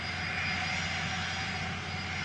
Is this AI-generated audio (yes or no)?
no